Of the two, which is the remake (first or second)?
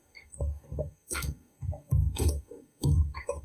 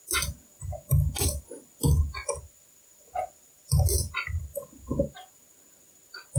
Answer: first